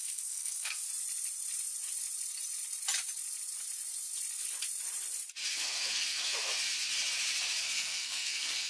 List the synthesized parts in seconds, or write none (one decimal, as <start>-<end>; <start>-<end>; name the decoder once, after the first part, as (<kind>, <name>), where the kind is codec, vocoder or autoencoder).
0.0-0.8 (codec, SNAC); 5.5-6.5; 7.6-8.7